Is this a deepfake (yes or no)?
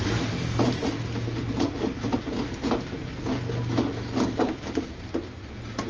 no